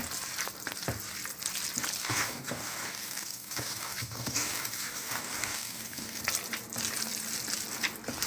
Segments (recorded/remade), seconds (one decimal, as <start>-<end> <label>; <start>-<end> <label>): 0.0-2.0 recorded; 2.0-6.2 remade; 6.2-8.3 recorded